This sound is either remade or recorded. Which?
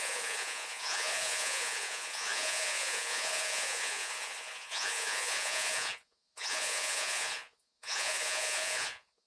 remade